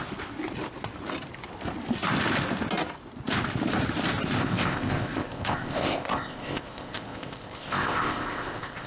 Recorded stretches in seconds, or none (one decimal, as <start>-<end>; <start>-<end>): 0.0-4.4